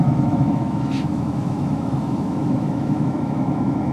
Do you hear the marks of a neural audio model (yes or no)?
yes